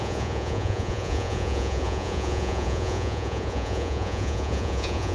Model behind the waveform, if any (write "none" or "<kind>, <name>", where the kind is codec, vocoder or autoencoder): vocoder, Vocos